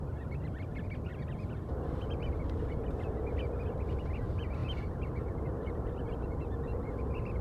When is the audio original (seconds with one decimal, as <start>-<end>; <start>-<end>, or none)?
0.0-4.6